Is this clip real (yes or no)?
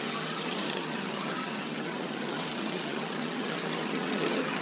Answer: no